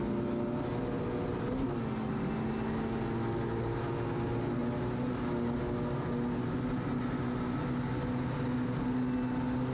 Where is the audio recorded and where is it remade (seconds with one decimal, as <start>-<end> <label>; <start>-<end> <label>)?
0.0-9.7 recorded